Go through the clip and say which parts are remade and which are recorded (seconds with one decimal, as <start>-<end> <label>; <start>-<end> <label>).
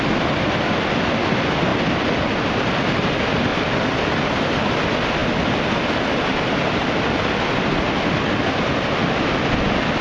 0.0-1.7 recorded; 1.7-2.5 remade; 2.5-10.0 recorded